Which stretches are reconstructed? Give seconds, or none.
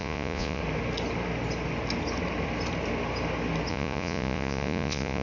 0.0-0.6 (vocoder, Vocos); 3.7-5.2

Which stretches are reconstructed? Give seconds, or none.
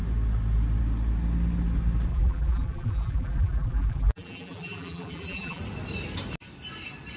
2.1-5.6 (vocoder, BigVGAN v2)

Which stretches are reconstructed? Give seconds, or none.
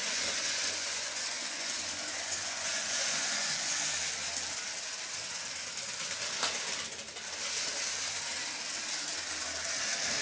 0.0-3.8 (vocoder, Vocos)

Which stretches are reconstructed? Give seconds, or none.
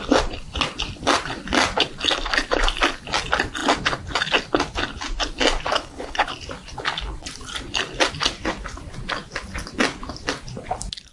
5.7-6.3 (codec, HILCodec)